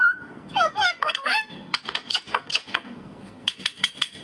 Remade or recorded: remade